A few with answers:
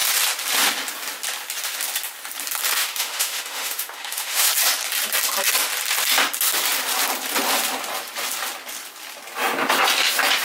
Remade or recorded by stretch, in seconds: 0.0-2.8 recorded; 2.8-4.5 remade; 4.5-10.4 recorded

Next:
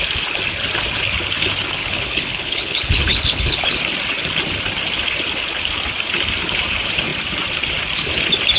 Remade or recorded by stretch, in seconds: 0.0-1.8 recorded; 1.8-3.7 remade; 3.7-8.6 recorded

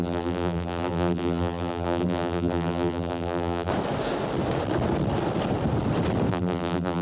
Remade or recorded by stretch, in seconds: 0.0-3.7 remade; 3.7-6.3 recorded; 6.3-7.0 remade

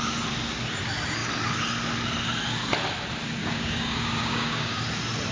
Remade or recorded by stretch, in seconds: 0.0-3.4 recorded; 3.4-4.8 remade; 4.8-5.3 recorded

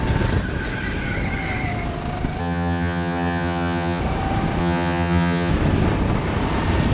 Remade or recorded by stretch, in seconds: 0.0-2.4 recorded; 2.4-4.0 remade; 4.0-4.6 recorded; 4.6-5.5 remade; 5.5-6.9 recorded

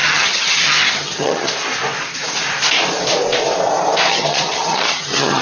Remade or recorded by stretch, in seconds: 0.0-1.5 remade; 1.5-4.1 recorded; 4.1-5.4 remade

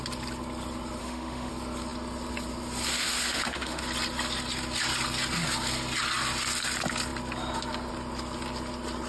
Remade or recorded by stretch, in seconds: 0.0-1.0 recorded; 1.0-1.5 remade; 1.5-2.9 recorded; 2.9-3.8 remade; 3.8-9.1 recorded